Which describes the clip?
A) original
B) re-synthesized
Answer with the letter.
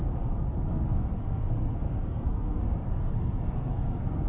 B